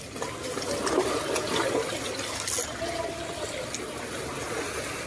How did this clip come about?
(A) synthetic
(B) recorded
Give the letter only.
B